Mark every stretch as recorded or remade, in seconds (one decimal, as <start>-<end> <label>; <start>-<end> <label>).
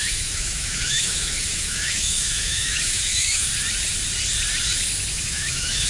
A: 0.0-3.5 remade; 3.5-5.1 recorded; 5.1-5.9 remade